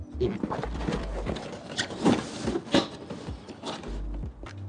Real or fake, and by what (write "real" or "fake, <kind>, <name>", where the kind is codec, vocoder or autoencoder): fake, vocoder, BigVGAN v2